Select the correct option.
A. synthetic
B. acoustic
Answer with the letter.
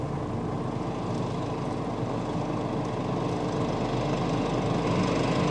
B